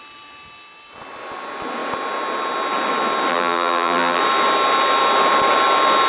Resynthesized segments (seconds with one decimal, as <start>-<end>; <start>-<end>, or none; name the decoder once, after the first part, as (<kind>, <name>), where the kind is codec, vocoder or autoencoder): 3.3-4.2 (vocoder, BigVGAN v2)